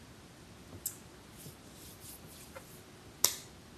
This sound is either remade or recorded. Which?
recorded